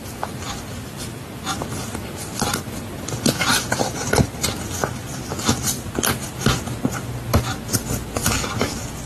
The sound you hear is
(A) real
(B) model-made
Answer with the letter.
A